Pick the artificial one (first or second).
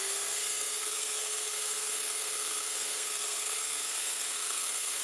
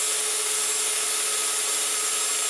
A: first